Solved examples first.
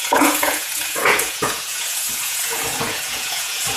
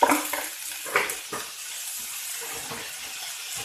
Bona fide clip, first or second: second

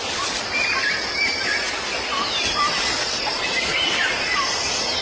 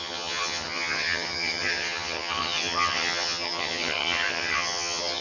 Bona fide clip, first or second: first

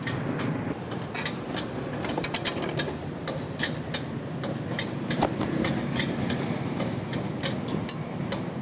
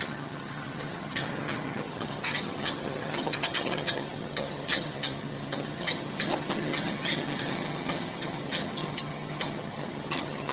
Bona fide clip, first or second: first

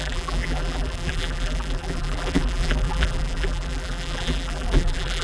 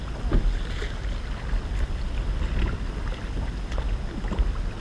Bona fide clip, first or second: second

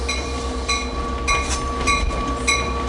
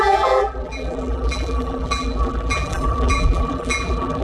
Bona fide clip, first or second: first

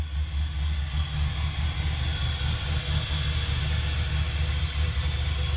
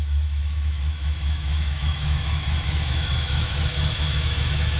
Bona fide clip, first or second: first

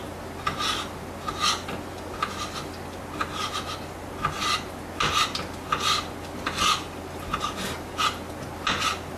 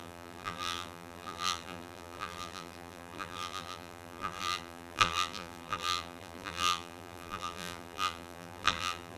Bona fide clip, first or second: first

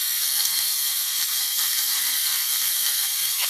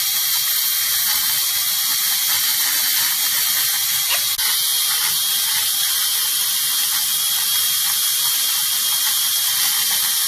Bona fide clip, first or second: second